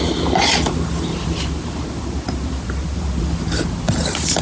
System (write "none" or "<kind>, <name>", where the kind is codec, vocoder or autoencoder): none